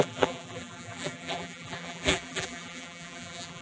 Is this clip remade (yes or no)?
yes